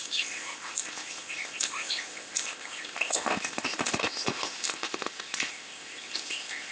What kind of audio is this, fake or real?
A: fake